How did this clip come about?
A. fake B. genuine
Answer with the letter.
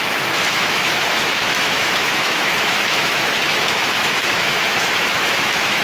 A